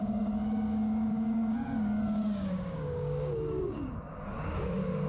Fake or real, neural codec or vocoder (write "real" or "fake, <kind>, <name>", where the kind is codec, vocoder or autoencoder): fake, codec, DAC